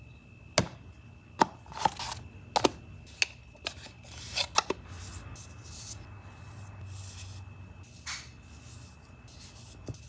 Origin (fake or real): real